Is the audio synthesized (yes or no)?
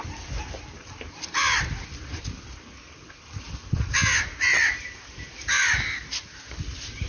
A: no